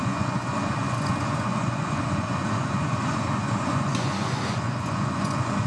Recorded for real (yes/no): no